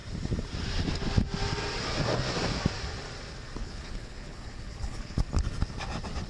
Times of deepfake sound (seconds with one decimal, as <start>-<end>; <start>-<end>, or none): 3.6-5.2

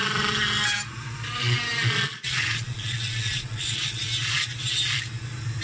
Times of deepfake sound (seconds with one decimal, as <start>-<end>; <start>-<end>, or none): 2.1-4.1

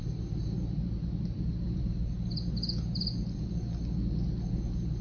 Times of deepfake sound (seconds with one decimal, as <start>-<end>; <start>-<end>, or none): 0.0-2.1

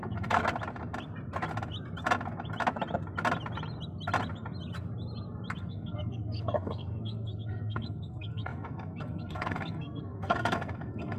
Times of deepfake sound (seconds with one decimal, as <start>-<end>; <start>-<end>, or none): 0.0-0.4; 5.7-11.2

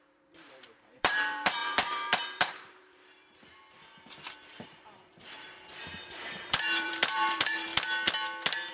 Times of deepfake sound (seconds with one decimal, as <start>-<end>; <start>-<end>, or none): 0.0-3.6; 4.5-7.7

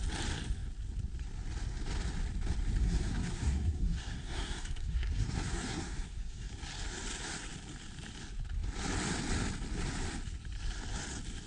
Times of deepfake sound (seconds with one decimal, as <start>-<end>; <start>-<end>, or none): 2.8-6.5

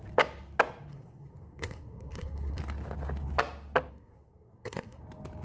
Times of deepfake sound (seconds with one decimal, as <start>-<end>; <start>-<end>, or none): 0.9-2.6; 3.9-5.0